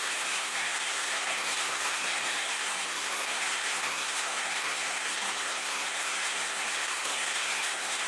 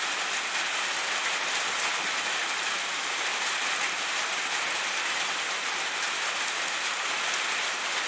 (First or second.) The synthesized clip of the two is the first